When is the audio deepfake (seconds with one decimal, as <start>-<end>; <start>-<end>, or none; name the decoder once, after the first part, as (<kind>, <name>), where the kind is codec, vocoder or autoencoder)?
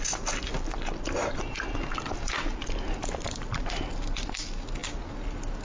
2.5-3.5 (vocoder, BigVGAN v2)